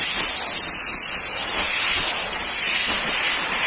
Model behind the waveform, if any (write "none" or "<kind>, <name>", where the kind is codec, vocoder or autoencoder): none